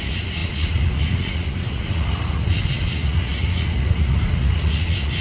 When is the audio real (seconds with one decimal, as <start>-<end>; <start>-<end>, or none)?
none